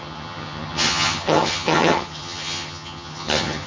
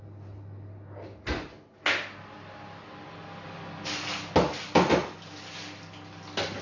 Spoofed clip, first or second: first